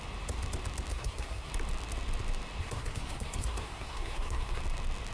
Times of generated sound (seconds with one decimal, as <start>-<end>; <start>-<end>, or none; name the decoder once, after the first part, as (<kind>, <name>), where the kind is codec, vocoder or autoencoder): 0.9-1.5 (codec, SNAC); 2.6-4.6